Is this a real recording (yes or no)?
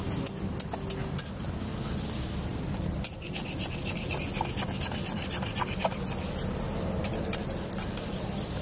yes